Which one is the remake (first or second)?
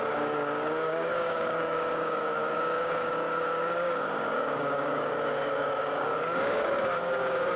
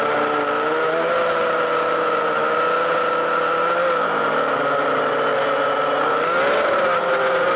first